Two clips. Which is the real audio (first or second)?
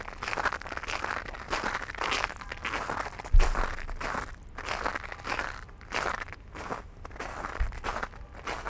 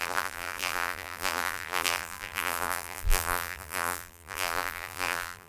first